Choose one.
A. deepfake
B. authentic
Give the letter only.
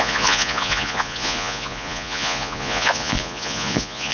A